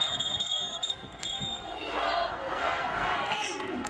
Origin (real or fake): fake